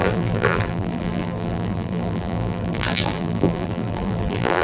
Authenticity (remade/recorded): remade